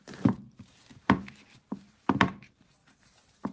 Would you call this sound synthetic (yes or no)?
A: yes